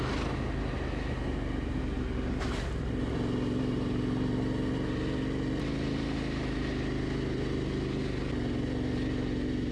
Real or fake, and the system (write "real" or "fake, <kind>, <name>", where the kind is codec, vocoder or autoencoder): real